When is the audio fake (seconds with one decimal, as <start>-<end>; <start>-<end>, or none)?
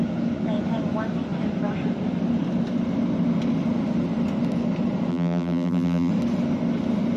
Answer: 5.1-6.1